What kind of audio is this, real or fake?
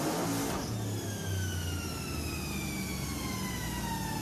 real